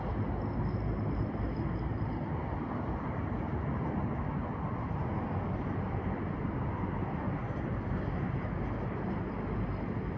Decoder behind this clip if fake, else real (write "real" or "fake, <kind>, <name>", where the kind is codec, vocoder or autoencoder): real